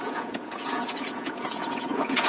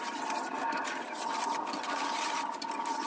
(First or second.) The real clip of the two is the second